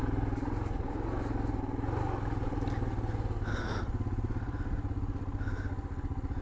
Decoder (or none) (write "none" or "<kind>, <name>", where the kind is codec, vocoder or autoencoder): none